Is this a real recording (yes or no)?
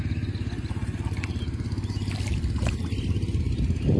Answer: yes